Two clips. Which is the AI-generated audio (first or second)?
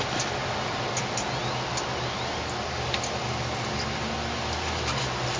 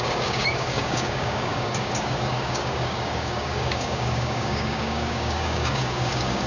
second